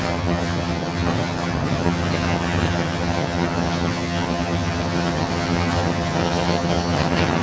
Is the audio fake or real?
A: fake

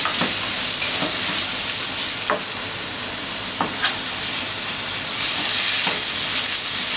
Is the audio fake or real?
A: real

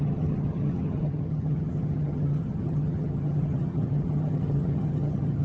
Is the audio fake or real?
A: fake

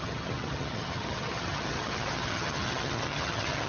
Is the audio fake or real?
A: fake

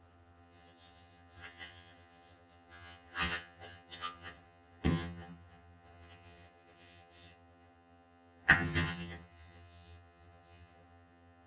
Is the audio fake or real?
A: fake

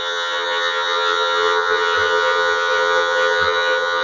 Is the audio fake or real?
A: fake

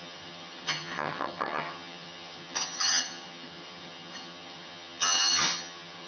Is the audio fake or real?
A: fake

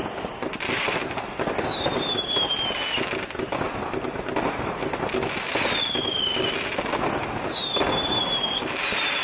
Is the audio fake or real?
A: real